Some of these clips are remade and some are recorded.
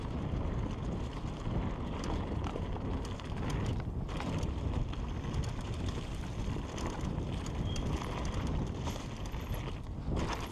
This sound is recorded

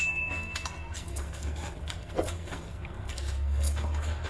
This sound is remade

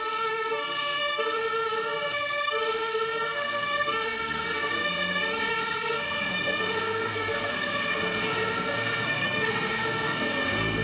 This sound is remade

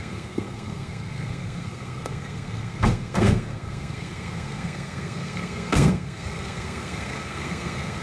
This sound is remade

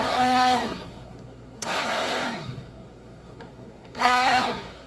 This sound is remade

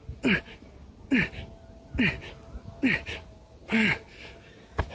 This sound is recorded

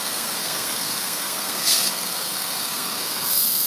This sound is remade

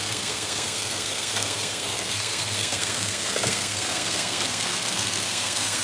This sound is remade